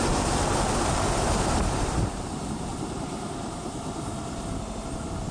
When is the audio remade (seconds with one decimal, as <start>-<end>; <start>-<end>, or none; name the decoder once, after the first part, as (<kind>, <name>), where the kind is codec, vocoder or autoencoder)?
2.7-3.7 (vocoder, BigVGAN v2)